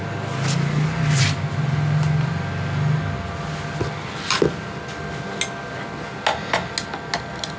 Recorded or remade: recorded